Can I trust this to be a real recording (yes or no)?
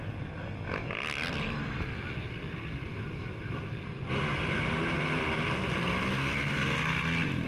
yes